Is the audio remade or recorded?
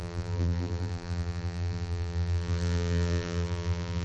remade